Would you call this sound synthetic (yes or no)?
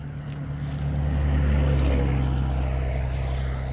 no